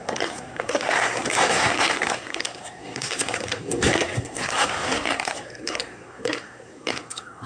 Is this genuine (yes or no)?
no